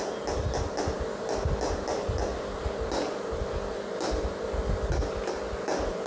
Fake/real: real